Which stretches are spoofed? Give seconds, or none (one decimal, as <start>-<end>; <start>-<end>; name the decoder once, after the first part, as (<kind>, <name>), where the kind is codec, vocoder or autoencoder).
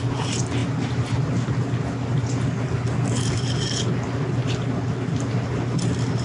none